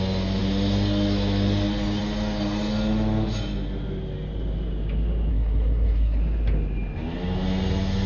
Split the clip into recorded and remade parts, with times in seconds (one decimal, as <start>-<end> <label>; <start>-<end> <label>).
0.0-5.3 recorded; 5.3-6.2 remade; 6.2-8.1 recorded